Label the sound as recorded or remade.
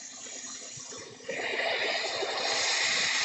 recorded